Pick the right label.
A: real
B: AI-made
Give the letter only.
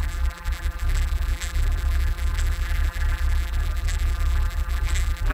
B